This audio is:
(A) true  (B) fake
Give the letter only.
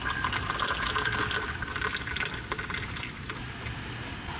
A